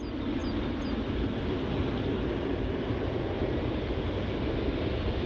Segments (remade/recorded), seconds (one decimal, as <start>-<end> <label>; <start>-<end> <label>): 0.0-5.3 recorded